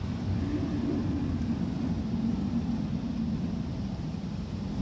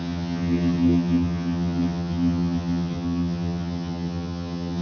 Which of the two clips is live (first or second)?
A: first